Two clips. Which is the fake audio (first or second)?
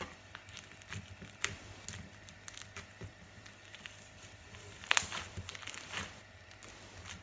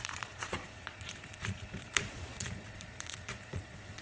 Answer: second